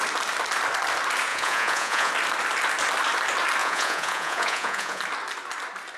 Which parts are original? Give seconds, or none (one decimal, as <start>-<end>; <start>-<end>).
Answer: 0.0-1.3; 2.1-3.6; 5.0-6.0